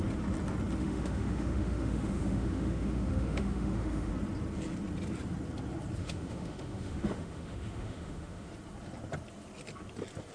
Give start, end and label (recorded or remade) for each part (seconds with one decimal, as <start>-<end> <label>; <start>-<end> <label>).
0.0-0.8 recorded; 0.8-4.1 remade; 4.1-6.0 recorded; 6.0-8.5 remade; 8.5-10.3 recorded

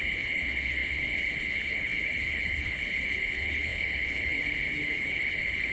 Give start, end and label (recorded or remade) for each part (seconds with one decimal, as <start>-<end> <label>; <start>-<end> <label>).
0.0-5.7 remade

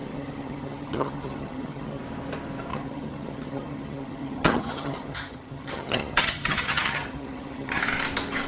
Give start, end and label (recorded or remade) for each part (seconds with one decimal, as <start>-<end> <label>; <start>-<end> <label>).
0.0-2.0 remade; 2.0-2.7 recorded; 2.7-7.8 remade; 7.8-8.5 recorded